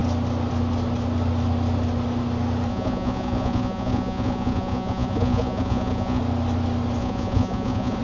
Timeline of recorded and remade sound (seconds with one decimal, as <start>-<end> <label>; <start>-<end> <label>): 0.0-2.7 recorded; 2.7-6.2 remade; 6.2-7.0 recorded; 7.0-8.0 remade